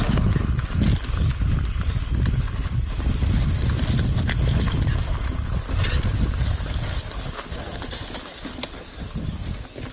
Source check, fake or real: real